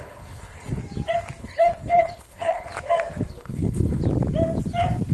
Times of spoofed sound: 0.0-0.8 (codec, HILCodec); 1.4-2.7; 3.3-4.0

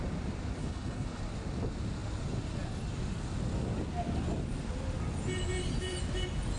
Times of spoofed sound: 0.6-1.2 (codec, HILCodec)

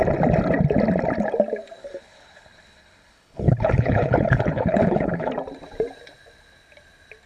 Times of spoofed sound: 1.8-5.3 (codec, HILCodec)